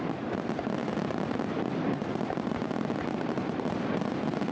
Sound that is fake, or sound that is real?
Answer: real